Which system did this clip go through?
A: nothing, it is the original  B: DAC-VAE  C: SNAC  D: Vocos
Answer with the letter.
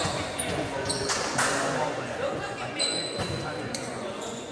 D